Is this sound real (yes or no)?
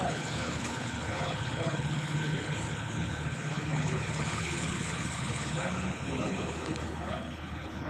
no